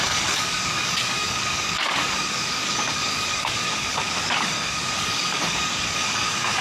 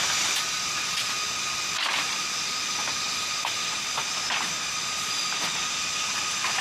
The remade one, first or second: first